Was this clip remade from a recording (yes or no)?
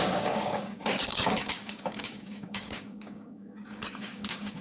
yes